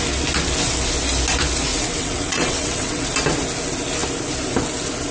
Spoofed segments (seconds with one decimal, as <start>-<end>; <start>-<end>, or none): 1.7-3.0